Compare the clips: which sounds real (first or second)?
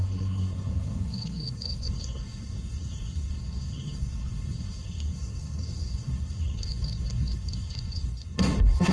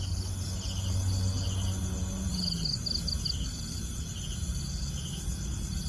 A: second